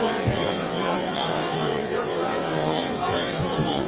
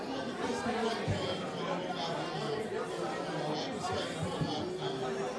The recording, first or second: second